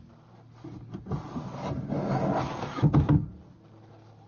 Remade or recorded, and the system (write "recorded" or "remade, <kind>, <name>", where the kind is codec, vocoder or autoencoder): recorded